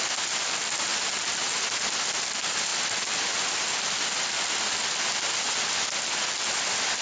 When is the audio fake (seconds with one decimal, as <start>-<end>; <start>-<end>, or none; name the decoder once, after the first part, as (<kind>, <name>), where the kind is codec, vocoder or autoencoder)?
none